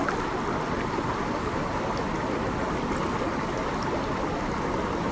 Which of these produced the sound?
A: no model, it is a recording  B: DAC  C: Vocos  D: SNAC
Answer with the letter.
A